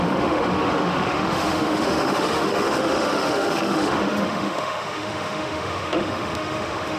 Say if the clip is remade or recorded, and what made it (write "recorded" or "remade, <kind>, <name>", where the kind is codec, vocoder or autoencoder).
remade, autoencoder, DAC-VAE